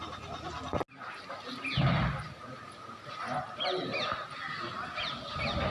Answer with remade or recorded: recorded